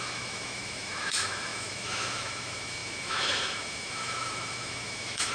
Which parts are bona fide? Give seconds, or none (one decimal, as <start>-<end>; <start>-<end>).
none